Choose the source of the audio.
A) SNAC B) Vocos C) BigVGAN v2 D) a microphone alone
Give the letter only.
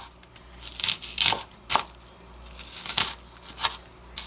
D